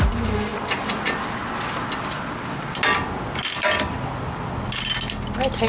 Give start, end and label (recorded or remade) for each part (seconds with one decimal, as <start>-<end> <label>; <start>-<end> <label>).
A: 0.0-5.7 recorded